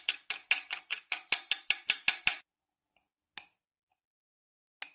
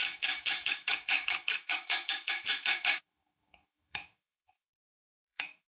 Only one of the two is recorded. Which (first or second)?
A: first